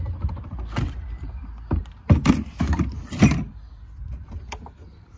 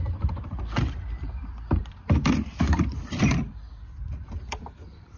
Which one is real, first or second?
first